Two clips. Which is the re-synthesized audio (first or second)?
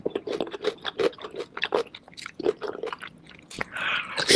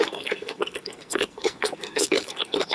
second